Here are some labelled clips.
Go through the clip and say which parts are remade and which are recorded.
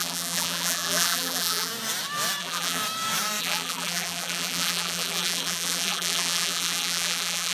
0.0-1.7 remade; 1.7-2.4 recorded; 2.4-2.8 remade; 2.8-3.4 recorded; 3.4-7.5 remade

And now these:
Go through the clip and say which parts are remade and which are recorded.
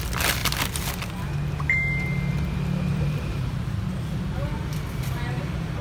0.0-2.9 recorded; 2.9-3.5 remade; 3.5-5.8 recorded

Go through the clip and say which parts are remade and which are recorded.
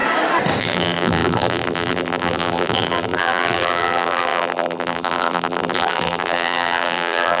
0.0-0.6 recorded; 0.6-7.4 remade